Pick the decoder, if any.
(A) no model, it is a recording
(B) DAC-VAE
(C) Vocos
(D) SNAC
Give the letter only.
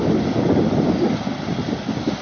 A